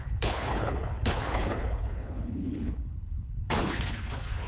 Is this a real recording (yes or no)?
no